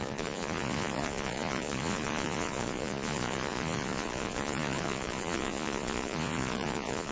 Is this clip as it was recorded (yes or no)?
no